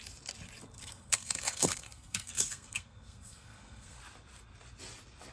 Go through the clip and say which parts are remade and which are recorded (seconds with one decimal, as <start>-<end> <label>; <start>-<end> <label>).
0.0-0.8 recorded; 0.8-4.0 remade; 4.0-5.3 recorded